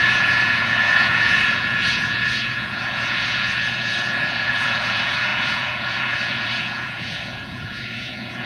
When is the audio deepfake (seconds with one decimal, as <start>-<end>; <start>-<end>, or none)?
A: 0.0-8.5